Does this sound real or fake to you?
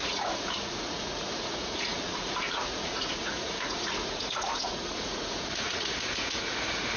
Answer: fake